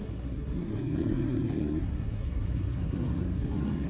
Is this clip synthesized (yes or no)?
yes